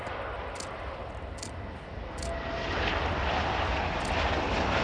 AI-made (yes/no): no